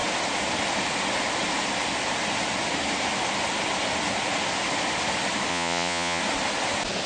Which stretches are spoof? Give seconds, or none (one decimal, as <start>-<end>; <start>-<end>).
5.5-6.2